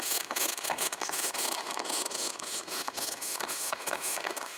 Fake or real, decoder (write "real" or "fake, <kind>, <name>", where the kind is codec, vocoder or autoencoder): fake, autoencoder, DAC-VAE